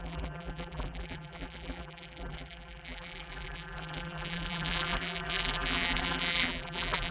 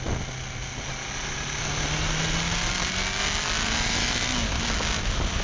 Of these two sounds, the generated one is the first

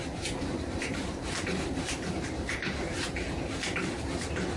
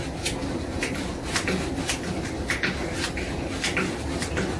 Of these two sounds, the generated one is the first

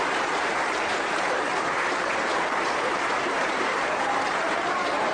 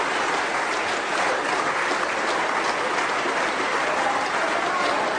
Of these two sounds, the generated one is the first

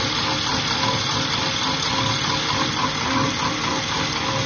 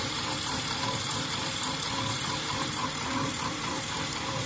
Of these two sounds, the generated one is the second